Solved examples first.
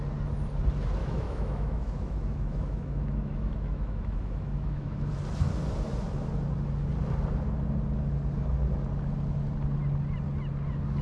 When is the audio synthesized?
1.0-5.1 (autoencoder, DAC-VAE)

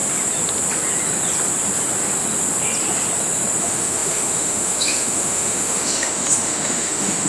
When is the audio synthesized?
3.6-7.3 (autoencoder, DAC-VAE)

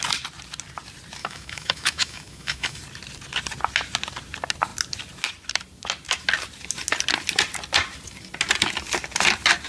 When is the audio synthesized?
1.2-2.8 (autoencoder, DAC-VAE)